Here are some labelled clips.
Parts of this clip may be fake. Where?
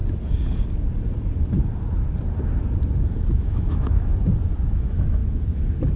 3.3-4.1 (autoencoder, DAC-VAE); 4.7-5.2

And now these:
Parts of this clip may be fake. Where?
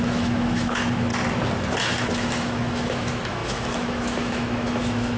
0.0-1.1 (autoencoder, DAC-VAE); 2.0-5.2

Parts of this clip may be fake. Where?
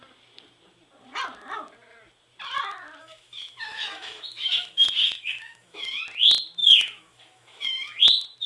3.0-6.0 (autoencoder, DAC-VAE); 6.6-8.0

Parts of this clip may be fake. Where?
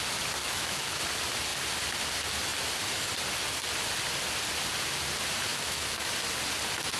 0.4-1.0 (autoencoder, DAC-VAE); 5.5-6.1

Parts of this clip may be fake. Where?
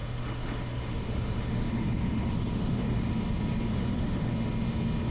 0.0-3.1 (autoencoder, DAC-VAE); 3.7-4.3